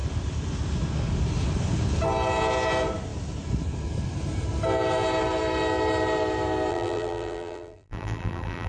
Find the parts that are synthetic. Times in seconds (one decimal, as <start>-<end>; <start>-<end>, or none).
6.7-8.7